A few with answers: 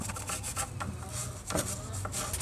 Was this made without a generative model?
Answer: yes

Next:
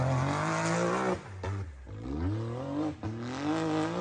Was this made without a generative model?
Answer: yes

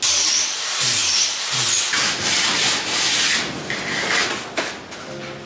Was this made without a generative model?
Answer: yes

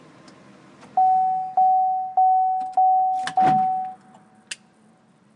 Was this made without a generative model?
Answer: yes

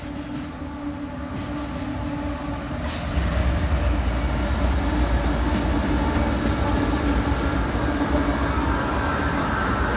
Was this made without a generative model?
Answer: yes